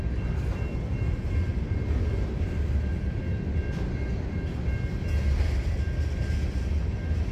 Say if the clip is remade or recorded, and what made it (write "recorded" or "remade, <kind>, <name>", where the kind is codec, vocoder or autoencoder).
recorded